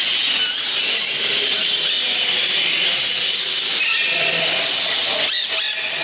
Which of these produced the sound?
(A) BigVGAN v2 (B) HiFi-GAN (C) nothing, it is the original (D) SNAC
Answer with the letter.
C